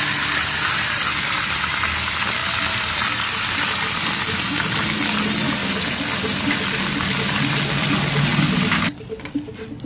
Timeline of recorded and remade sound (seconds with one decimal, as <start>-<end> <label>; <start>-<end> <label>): 0.0-9.9 remade